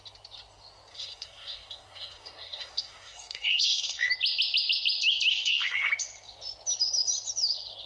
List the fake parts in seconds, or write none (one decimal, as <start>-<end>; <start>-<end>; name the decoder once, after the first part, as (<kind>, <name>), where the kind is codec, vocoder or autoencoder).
0.9-4.1 (codec, SNAC); 5.3-5.9